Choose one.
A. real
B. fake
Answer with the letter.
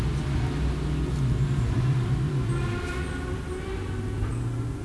A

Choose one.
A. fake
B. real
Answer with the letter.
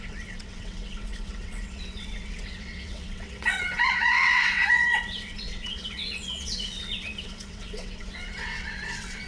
A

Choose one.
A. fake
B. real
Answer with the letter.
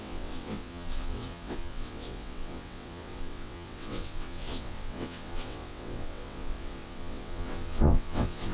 A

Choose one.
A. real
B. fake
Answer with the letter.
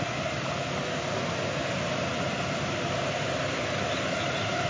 A